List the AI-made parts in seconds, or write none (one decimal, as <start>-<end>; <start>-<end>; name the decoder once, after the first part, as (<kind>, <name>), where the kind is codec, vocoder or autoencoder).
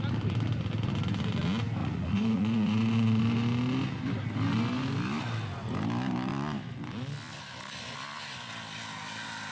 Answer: 1.8-3.2 (vocoder, Vocos)